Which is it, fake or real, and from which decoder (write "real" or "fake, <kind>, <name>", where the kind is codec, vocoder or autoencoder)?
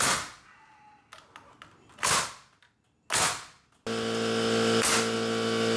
real